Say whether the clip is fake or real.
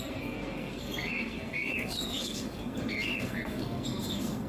fake